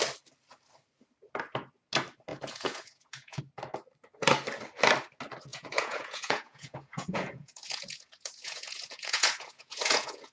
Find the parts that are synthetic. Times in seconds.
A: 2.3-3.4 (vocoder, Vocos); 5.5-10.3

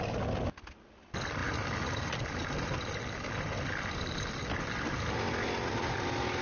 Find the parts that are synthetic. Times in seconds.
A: none

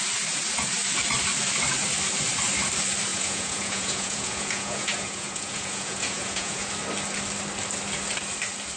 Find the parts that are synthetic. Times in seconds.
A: 3.1-6.7 (vocoder, Vocos)